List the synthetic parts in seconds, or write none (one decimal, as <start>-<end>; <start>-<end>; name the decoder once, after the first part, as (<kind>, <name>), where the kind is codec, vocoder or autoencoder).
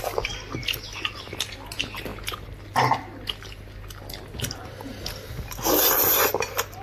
none